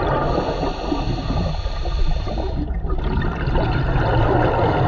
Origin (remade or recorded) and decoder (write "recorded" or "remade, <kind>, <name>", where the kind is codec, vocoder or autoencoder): recorded